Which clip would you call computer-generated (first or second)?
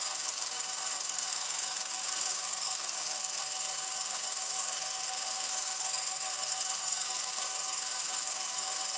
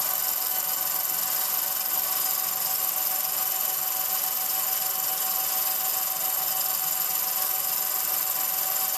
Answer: first